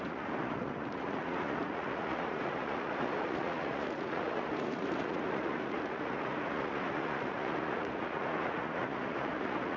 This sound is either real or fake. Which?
fake